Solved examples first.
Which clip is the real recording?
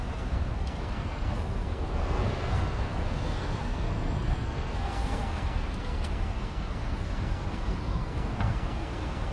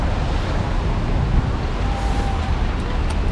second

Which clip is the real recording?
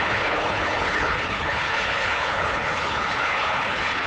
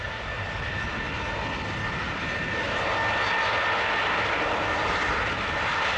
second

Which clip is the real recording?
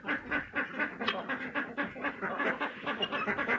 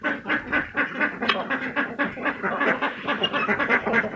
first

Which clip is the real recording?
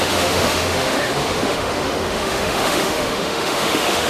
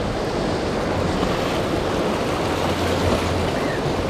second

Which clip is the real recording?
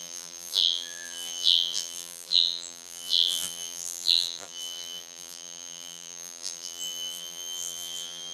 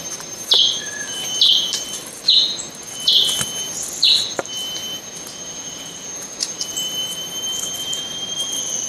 second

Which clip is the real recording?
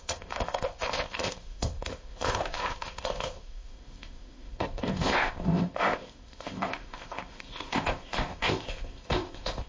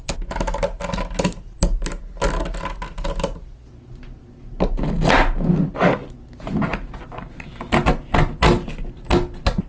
second